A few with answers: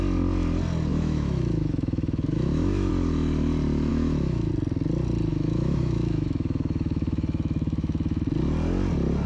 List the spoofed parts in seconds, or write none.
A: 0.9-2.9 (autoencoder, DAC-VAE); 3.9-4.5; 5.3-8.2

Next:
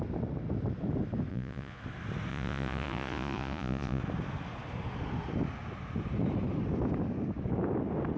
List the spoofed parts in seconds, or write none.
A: 1.3-1.8 (vocoder, Vocos); 2.3-4.0

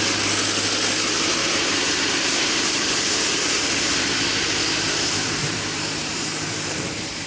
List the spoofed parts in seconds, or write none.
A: 1.4-3.7 (vocoder, BigVGAN v2); 5.4-6.3

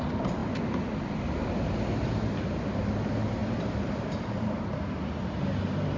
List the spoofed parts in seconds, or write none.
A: none

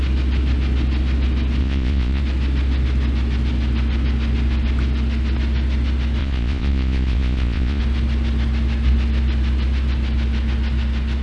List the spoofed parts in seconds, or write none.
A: 1.6-2.2 (vocoder, Vocos); 6.2-7.8

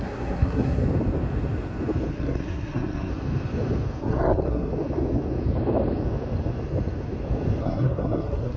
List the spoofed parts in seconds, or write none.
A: 0.0-0.8 (codec, SNAC); 2.1-3.1; 4.0-4.7; 7.6-8.6

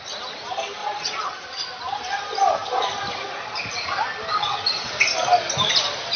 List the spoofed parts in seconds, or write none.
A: 0.8-1.3 (vocoder, Vocos)